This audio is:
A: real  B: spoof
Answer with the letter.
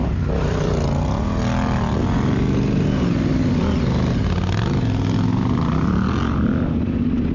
A